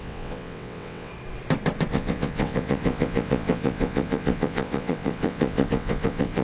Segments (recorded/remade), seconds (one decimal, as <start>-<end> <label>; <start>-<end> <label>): 0.0-1.1 remade; 1.1-1.9 recorded; 1.9-6.4 remade